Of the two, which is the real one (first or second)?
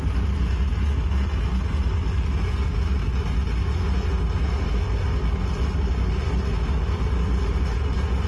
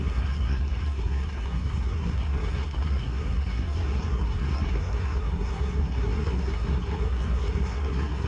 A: first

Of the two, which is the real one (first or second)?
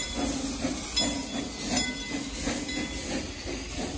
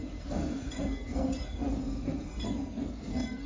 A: first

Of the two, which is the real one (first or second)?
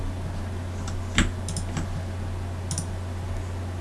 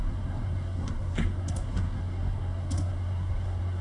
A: first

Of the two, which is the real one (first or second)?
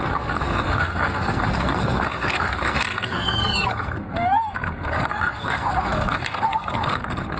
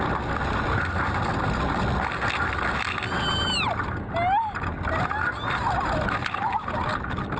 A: second